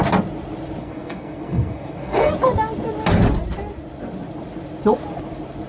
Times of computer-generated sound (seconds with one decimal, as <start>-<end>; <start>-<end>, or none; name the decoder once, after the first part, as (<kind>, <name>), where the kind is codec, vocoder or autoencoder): 0.8-2.3 (codec, SNAC)